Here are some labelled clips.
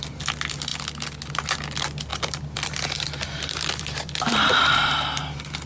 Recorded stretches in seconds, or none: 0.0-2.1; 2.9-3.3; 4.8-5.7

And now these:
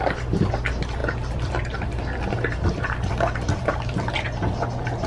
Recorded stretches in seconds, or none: 0.0-1.0; 4.1-5.1